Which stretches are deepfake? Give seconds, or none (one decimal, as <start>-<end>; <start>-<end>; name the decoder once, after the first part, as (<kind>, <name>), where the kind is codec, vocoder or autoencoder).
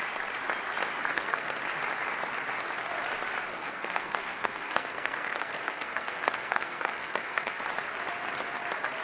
1.1-1.6 (codec, SNAC); 3.5-7.6